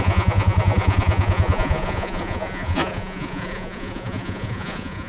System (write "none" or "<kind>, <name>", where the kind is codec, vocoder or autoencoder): vocoder, Vocos